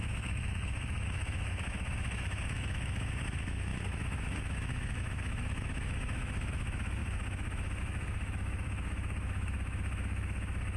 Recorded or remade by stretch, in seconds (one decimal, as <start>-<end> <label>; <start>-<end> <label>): 0.0-10.8 remade